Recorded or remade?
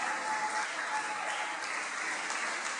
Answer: recorded